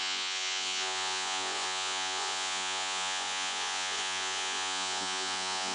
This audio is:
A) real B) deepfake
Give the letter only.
B